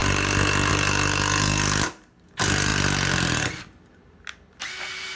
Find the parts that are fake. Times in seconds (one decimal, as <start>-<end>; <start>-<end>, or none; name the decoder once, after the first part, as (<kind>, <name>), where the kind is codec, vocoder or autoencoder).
none